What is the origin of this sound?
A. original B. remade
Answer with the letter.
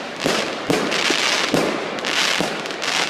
A